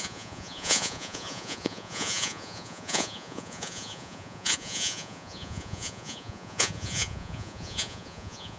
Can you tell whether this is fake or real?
fake